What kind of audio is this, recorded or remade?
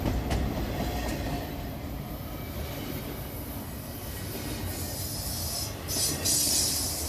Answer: recorded